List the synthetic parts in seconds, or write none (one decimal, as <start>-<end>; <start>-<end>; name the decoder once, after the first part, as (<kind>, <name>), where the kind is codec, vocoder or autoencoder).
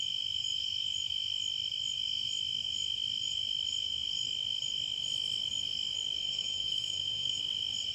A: 6.2-7.4 (autoencoder, DAC-VAE)